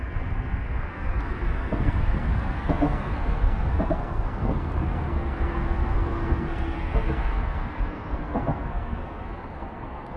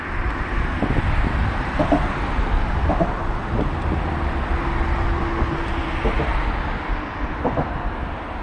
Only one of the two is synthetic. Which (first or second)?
first